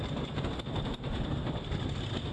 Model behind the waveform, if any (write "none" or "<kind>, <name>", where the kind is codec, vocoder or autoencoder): vocoder, BigVGAN v2